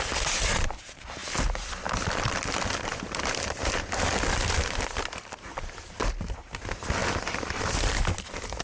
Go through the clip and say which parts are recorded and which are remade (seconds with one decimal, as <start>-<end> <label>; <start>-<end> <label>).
0.0-8.6 recorded